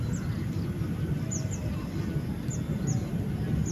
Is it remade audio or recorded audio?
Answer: recorded